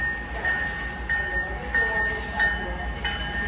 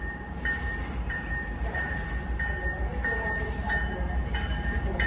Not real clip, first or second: second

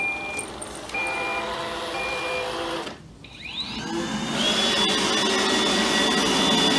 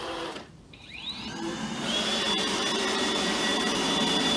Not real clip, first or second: second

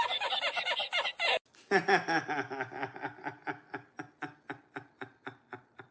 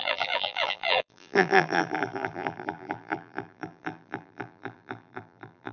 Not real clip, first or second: second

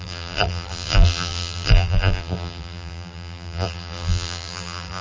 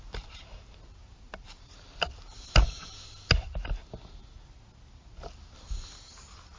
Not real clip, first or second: first